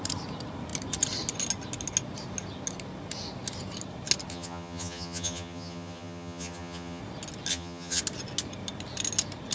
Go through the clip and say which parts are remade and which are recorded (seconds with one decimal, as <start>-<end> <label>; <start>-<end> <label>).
0.0-4.3 recorded; 4.3-7.0 remade; 7.0-7.5 recorded; 7.5-8.0 remade; 8.0-9.5 recorded